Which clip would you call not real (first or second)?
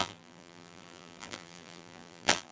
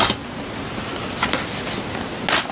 first